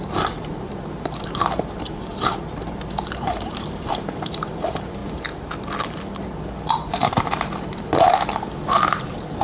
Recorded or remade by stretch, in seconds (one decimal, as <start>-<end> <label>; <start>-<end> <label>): 0.0-5.0 remade; 5.0-6.9 recorded; 6.9-9.4 remade